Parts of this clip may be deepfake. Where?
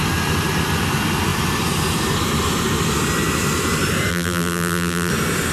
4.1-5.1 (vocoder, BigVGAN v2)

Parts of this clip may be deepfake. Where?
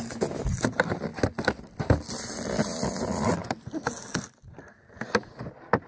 none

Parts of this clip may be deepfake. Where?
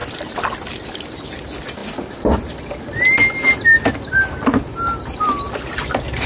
none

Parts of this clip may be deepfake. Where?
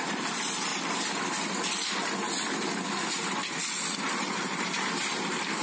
0.0-0.7 (vocoder, BigVGAN v2); 3.6-5.6